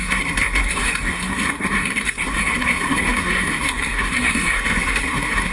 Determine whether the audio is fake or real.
fake